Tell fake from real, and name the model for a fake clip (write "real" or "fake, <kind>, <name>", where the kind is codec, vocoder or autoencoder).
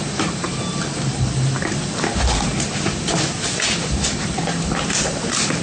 real